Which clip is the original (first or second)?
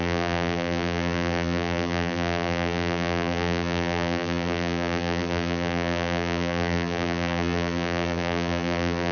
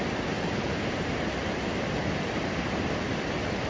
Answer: second